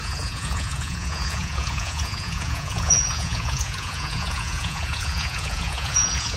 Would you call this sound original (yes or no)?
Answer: no